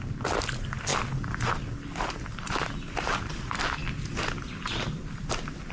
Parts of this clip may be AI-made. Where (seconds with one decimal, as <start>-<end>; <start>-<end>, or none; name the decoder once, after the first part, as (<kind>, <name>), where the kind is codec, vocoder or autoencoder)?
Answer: none